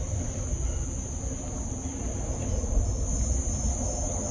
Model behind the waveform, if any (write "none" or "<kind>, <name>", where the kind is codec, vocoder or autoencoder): none